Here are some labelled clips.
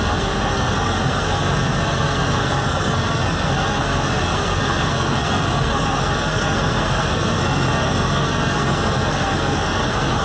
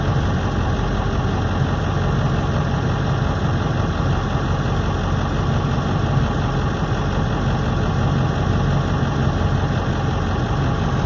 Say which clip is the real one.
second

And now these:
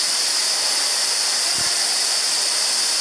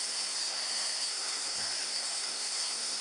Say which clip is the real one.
first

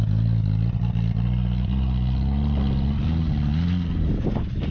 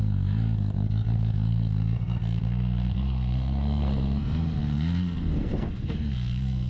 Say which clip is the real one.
first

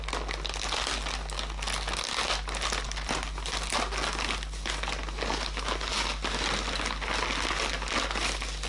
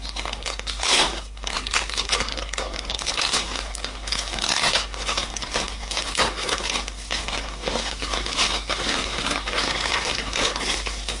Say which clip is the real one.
first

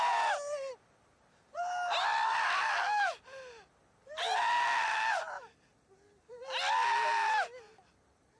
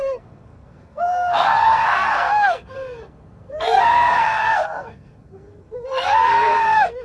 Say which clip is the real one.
first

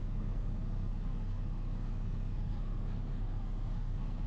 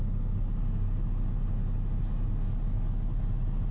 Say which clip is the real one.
second